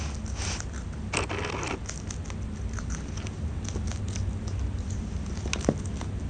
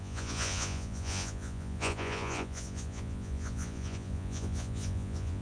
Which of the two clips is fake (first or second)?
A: second